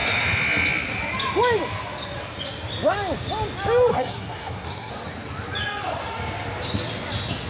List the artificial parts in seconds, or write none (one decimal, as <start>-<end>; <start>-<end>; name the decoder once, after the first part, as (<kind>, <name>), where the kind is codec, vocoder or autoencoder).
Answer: 3.9-4.9 (codec, SNAC)